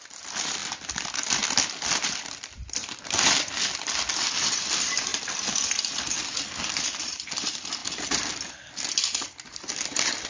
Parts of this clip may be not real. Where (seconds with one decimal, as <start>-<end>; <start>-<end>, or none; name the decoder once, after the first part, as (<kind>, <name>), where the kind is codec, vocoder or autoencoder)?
0.0-0.6 (vocoder, BigVGAN v2); 2.1-5.1; 7.0-10.3